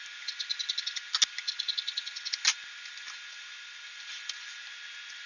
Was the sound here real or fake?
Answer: real